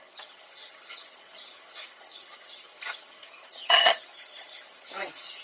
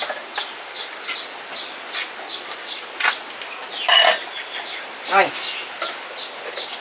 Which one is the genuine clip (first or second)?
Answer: second